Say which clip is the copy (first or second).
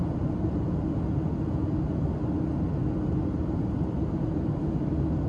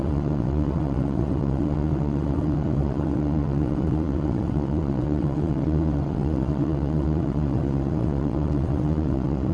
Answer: second